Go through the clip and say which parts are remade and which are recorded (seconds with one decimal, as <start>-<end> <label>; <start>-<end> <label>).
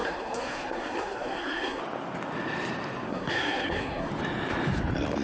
0.0-1.8 remade; 1.8-3.1 recorded; 3.1-4.1 remade; 4.1-5.2 recorded